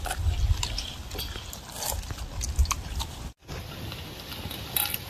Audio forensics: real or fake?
real